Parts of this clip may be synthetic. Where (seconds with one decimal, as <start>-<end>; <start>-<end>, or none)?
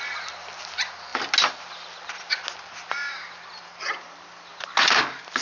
none